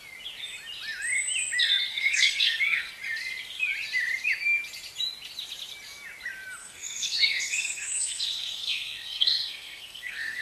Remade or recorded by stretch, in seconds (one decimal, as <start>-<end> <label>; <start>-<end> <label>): 0.0-1.9 recorded; 1.9-2.9 remade; 2.9-6.6 recorded; 6.6-10.4 remade